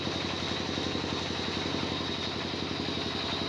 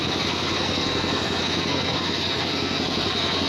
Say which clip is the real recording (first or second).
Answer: first